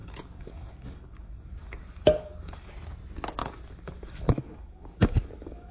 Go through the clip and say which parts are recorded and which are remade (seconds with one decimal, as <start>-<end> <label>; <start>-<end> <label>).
0.0-2.7 remade; 2.7-3.4 recorded; 3.4-5.7 remade